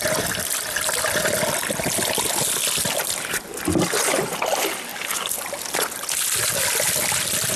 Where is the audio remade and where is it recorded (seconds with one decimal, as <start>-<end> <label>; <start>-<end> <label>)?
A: 0.0-7.6 recorded